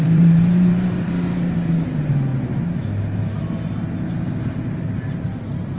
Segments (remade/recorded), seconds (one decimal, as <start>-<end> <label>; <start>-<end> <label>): 0.0-2.3 remade; 2.3-5.8 recorded